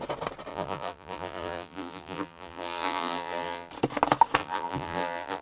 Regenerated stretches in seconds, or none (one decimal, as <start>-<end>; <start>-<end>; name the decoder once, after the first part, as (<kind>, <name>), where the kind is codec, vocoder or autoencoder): 0.5-3.7 (vocoder, BigVGAN v2); 4.4-5.4